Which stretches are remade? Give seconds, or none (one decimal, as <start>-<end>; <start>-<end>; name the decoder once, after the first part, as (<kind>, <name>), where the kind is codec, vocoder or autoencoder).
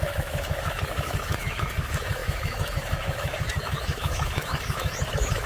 0.0-5.5 (autoencoder, DAC-VAE)